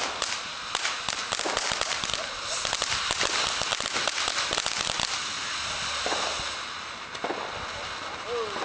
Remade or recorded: recorded